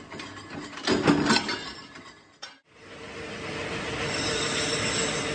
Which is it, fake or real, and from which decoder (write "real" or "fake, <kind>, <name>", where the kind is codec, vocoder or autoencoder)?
real